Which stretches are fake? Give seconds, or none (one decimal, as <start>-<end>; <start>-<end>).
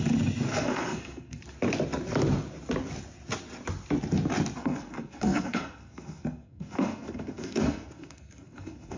0.5-1.4; 4.6-9.0